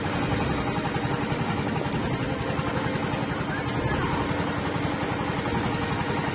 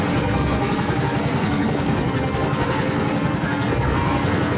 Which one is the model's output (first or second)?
second